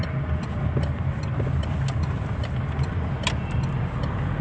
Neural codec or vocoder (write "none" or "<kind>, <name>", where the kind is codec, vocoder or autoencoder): none